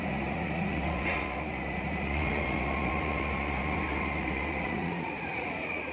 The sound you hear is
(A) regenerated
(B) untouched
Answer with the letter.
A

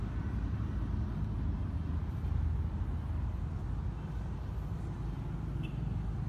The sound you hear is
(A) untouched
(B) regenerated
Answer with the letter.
A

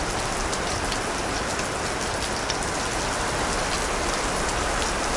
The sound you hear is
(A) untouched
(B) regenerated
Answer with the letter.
A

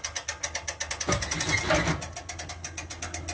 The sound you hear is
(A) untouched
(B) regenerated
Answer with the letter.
A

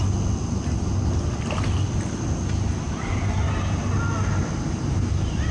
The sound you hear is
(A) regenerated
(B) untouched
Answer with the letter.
B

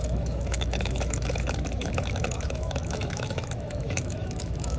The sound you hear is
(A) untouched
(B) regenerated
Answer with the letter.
B